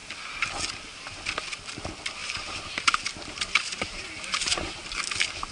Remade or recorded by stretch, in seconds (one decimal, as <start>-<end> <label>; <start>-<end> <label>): 0.0-2.2 recorded; 2.2-5.0 remade; 5.0-5.5 recorded